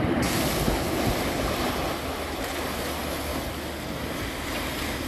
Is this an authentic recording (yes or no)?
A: yes